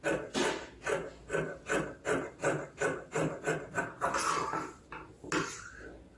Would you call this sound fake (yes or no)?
no